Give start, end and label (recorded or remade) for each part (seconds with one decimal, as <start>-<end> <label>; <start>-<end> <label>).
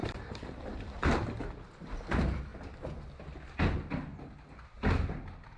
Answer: 0.0-0.7 remade; 0.7-5.6 recorded